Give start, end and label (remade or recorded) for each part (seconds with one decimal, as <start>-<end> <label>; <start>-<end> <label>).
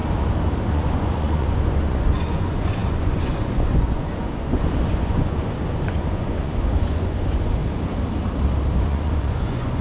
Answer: 0.0-0.7 recorded; 0.7-7.6 remade; 7.6-8.8 recorded; 8.8-9.8 remade